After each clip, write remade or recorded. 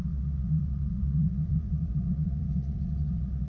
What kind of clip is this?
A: remade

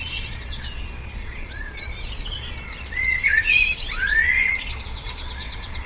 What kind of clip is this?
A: remade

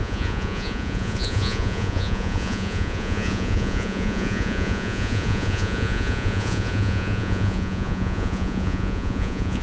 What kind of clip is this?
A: remade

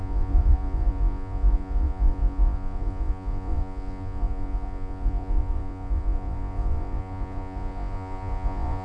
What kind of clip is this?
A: remade